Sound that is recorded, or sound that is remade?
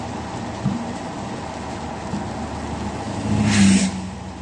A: recorded